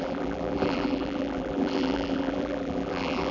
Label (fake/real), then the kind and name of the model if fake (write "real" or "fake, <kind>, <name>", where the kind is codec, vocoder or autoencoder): fake, vocoder, BigVGAN v2